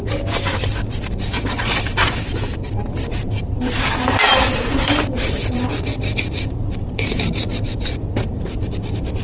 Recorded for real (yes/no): no